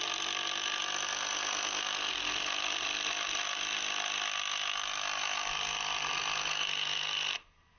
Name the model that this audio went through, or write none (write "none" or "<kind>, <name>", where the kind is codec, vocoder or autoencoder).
none